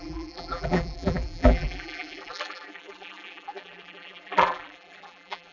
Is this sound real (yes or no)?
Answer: no